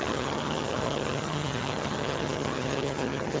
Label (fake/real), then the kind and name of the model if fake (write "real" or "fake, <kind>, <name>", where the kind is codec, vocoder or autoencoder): fake, vocoder, HiFi-GAN